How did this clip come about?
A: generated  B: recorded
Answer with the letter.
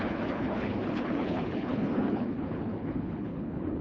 A